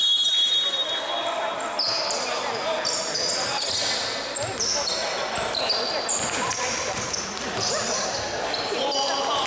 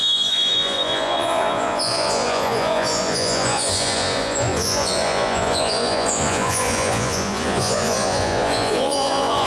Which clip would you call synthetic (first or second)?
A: second